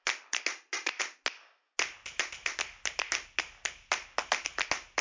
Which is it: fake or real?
real